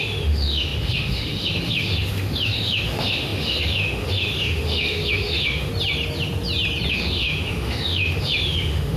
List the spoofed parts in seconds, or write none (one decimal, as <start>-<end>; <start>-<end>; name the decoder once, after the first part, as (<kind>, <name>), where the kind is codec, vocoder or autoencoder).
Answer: 0.0-5.7 (autoencoder, DAC-VAE); 6.9-9.0